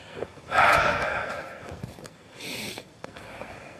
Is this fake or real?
fake